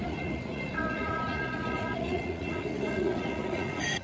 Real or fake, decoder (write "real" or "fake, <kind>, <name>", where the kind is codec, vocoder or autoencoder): fake, vocoder, Vocos